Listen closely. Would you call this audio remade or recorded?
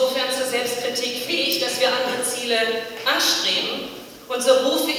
recorded